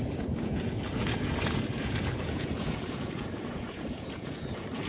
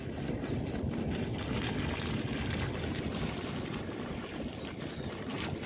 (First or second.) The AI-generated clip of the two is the first